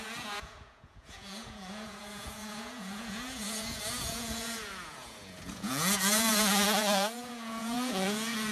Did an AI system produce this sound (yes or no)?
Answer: yes